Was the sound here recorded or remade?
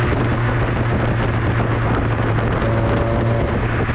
recorded